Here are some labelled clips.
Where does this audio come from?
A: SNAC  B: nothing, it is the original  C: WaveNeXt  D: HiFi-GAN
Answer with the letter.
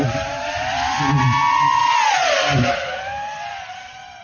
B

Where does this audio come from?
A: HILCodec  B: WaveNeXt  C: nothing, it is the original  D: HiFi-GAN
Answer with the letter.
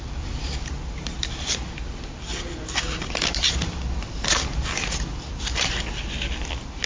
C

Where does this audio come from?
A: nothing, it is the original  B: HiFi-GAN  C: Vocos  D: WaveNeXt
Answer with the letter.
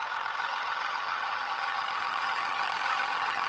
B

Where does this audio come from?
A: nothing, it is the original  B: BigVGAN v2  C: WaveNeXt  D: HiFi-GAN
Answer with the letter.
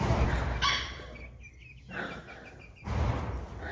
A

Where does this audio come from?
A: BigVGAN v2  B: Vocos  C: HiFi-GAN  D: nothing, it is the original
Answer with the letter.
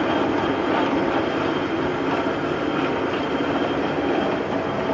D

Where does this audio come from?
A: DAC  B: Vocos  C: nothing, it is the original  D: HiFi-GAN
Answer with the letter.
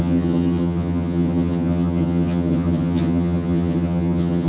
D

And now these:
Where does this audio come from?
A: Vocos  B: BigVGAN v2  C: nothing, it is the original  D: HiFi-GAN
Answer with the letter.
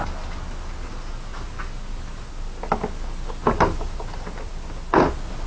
C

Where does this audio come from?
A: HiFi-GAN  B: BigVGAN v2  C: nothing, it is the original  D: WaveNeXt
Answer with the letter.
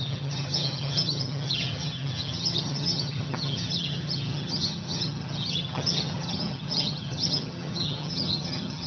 A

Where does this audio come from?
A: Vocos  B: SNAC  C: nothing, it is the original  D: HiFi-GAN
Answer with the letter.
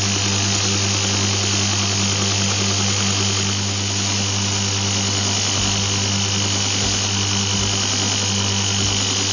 C